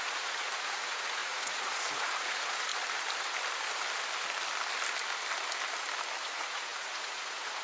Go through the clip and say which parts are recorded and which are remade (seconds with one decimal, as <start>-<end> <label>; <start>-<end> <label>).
0.0-2.7 remade; 2.7-6.1 recorded; 6.1-7.6 remade